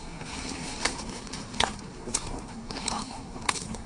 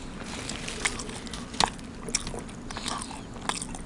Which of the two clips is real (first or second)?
second